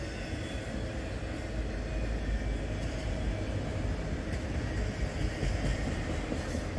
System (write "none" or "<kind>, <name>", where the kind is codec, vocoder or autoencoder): none